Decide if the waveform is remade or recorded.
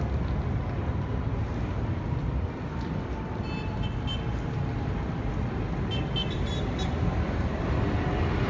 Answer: recorded